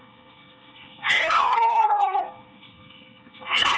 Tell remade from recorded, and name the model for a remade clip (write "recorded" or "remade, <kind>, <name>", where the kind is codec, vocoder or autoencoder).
remade, codec, SNAC